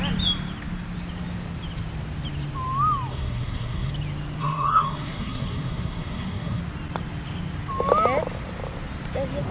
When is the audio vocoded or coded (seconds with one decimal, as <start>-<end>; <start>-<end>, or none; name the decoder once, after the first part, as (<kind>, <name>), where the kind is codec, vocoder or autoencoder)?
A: 3.1-3.9 (codec, SNAC); 4.4-6.6

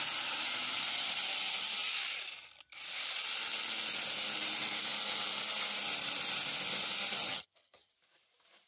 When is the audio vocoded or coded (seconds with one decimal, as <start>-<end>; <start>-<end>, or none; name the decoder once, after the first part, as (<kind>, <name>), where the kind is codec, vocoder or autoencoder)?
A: 7.2-7.9 (vocoder, HiFi-GAN)